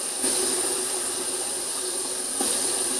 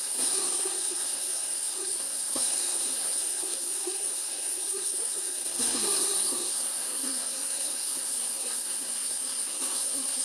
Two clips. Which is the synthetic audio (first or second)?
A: second